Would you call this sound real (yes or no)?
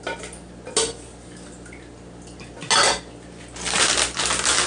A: yes